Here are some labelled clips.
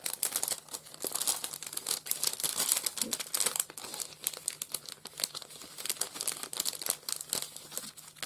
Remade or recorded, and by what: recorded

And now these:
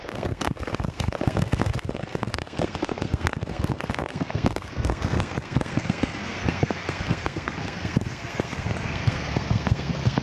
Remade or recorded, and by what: remade, codec, SNAC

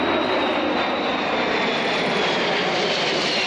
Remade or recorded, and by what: recorded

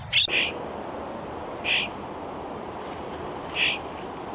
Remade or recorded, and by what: recorded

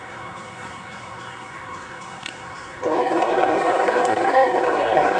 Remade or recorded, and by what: remade, codec, SNAC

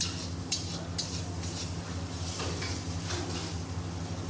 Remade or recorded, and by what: recorded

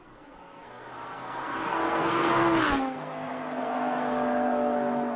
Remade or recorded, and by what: remade, codec, SNAC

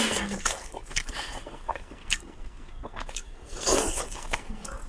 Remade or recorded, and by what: remade, codec, SNAC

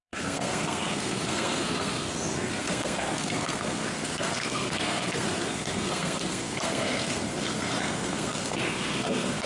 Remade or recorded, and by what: remade, codec, SNAC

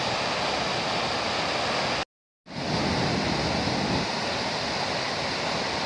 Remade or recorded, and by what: recorded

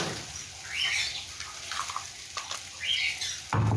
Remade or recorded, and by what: recorded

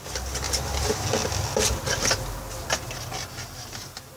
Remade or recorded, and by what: recorded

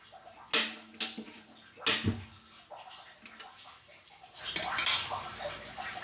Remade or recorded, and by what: recorded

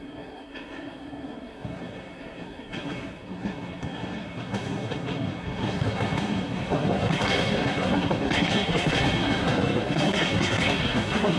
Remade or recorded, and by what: remade, codec, SNAC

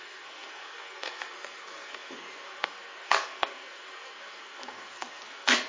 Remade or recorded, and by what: remade, codec, SNAC